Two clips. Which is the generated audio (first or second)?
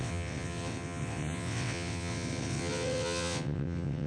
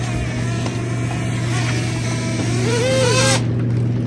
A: first